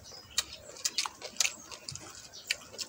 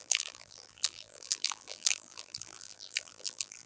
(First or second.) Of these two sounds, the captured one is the first